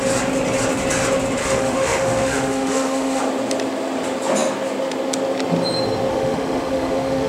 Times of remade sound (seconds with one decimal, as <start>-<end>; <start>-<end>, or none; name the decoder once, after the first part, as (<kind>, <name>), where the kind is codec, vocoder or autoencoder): 1.4-3.2 (autoencoder, DAC-VAE); 6.1-7.3